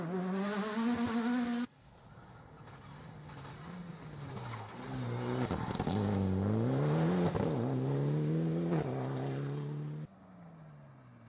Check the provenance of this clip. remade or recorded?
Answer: recorded